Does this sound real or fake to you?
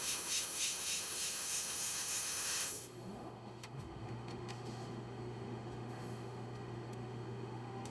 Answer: fake